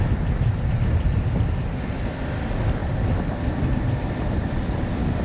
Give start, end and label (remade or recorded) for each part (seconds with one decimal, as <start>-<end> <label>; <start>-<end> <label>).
0.0-5.2 recorded